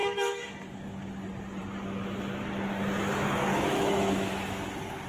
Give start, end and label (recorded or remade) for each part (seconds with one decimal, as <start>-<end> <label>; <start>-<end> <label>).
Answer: 0.0-0.5 remade; 0.5-3.5 recorded; 3.5-4.6 remade; 4.6-5.1 recorded

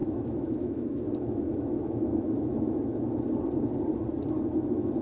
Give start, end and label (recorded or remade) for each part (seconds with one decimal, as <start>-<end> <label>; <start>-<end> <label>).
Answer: 0.0-3.0 remade; 3.0-5.0 recorded

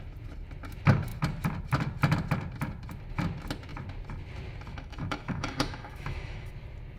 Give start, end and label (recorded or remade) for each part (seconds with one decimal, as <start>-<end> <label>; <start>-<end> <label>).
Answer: 0.0-4.7 recorded; 4.7-6.5 remade; 6.5-7.0 recorded

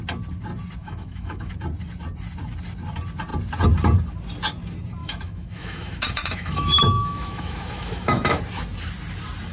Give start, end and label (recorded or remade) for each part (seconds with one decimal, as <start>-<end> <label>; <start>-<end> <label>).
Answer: 0.0-0.8 recorded; 0.8-1.5 remade; 1.5-5.0 recorded; 5.0-8.4 remade; 8.4-9.5 recorded